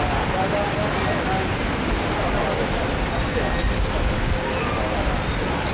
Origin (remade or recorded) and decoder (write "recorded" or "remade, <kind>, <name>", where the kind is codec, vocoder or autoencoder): recorded